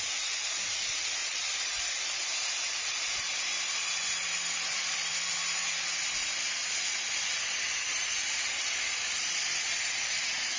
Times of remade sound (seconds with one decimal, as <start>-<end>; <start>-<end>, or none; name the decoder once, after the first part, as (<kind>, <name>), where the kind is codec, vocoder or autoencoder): 1.2-1.8 (vocoder, Vocos)